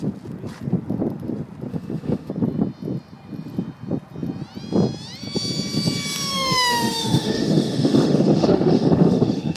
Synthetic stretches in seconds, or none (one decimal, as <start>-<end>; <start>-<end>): 1.7-2.3; 6.3-9.6